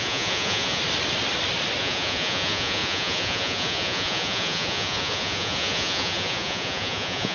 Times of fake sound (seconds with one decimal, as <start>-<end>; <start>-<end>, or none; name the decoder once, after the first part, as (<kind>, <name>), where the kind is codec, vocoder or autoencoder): 0.0-0.8 (vocoder, Vocos); 1.8-7.3